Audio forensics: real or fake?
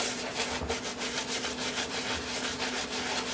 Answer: real